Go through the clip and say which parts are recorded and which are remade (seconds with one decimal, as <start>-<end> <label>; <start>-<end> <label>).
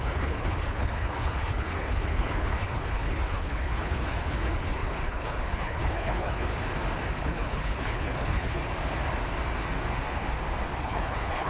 0.0-6.5 remade; 6.5-7.2 recorded; 7.2-8.6 remade; 8.6-10.8 recorded; 10.8-11.5 remade